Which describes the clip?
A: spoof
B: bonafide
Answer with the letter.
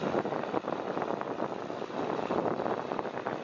B